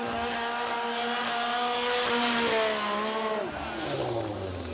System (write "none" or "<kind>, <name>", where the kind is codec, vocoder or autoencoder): none